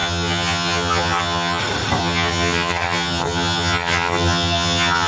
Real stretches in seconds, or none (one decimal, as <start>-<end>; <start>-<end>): 1.6-2.0